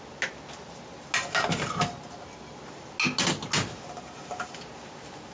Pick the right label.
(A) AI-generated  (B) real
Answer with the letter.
B